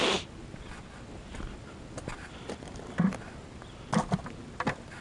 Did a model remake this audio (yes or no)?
no